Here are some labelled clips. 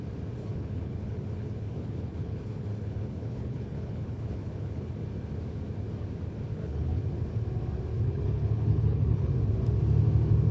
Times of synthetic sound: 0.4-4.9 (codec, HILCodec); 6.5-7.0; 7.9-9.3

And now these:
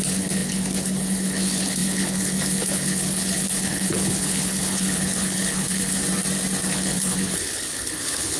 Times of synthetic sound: 0.0-6.0 (codec, HILCodec); 6.7-8.4

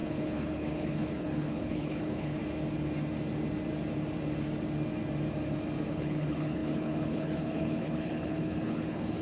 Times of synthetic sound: 0.0-2.4 (codec, HILCodec); 5.9-9.2